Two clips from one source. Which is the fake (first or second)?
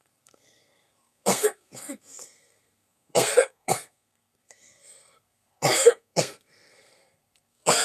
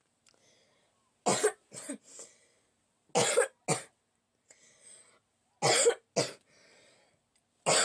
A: first